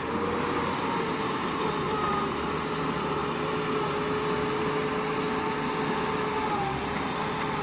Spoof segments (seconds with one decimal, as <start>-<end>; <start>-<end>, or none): 0.0-3.2; 6.5-7.6